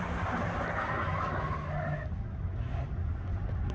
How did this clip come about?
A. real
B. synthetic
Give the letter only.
A